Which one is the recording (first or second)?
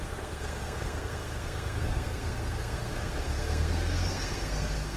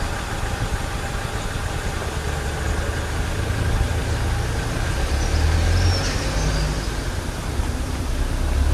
second